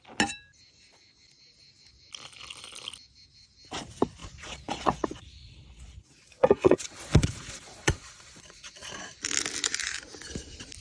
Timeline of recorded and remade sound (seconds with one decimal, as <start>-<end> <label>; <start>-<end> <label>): 0.0-4.2 recorded; 4.2-9.0 remade; 9.0-10.8 recorded